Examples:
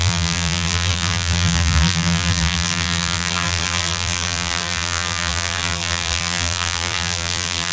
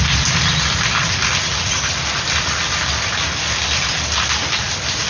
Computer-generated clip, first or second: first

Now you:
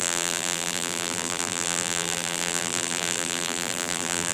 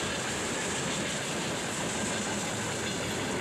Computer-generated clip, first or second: first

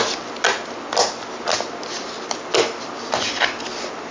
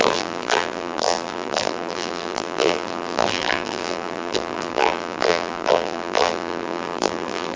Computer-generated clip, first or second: second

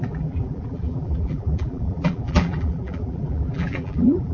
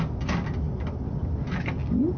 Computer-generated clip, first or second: first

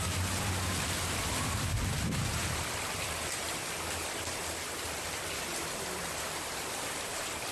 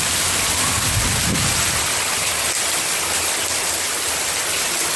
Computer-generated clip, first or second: first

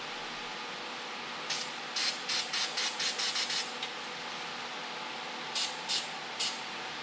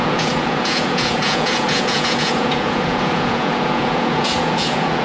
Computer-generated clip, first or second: second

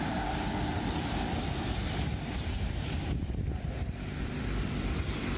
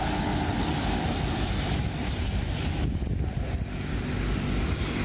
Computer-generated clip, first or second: first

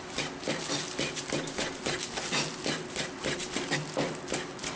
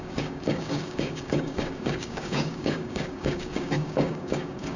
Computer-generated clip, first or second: second